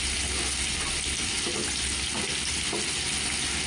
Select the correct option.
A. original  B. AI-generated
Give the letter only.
A